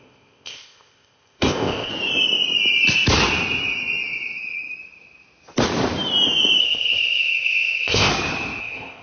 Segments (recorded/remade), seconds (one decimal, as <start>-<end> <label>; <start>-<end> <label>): 0.0-1.9 remade; 1.9-6.6 recorded; 6.6-8.1 remade; 8.1-8.6 recorded; 8.6-9.0 remade